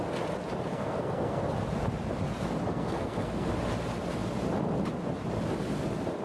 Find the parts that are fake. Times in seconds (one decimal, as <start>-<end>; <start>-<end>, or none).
0.7-1.5; 2.7-3.5